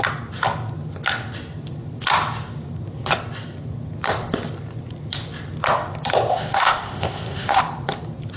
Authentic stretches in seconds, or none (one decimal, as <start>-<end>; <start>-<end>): 0.0-6.3; 7.6-8.4